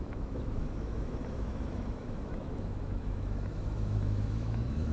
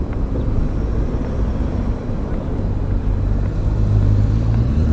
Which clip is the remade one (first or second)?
first